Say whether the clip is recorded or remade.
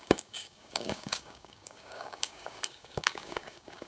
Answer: remade